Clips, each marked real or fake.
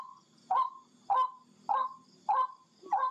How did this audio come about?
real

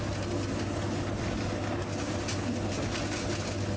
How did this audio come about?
real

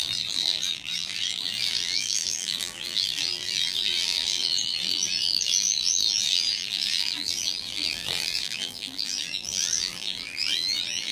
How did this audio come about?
fake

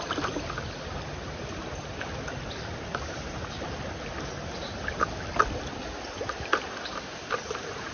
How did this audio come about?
real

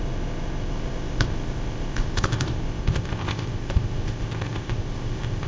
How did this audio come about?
fake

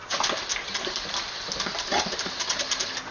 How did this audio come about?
real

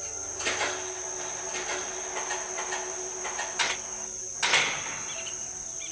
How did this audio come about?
real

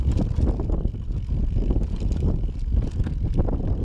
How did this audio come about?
real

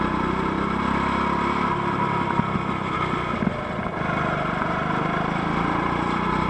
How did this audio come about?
real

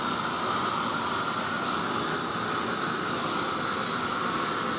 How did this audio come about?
real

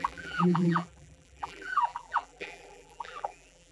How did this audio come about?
fake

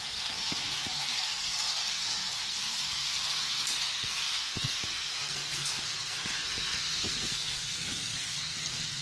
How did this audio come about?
fake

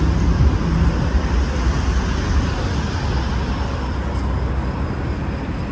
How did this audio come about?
real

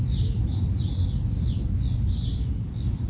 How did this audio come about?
real